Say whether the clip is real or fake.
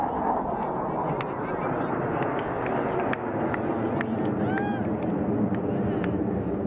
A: real